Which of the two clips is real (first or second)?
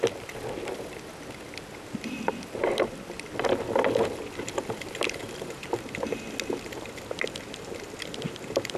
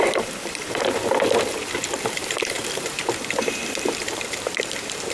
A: first